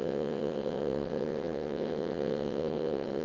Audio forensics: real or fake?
fake